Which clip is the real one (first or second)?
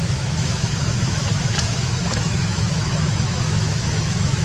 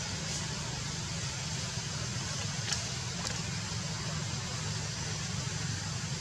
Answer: second